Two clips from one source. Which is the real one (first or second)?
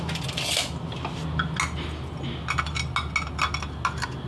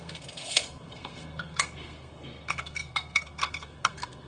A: first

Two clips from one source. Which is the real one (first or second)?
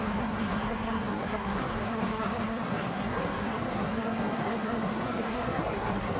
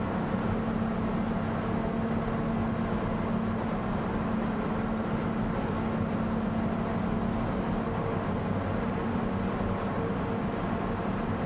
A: second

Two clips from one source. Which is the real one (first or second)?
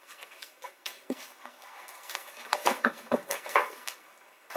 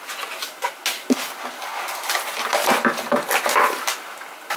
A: second